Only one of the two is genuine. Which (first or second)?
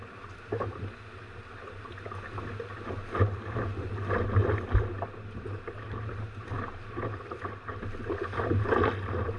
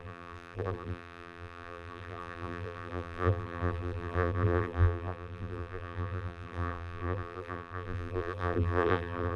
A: first